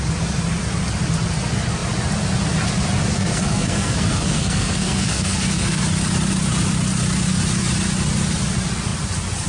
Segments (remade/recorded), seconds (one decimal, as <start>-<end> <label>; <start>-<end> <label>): 0.0-3.1 recorded; 3.1-5.8 remade; 5.8-9.5 recorded

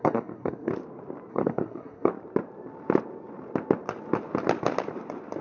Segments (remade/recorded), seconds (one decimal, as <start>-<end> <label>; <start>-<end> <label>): 0.0-0.7 remade; 0.7-1.3 recorded; 1.3-2.1 remade; 2.1-5.4 recorded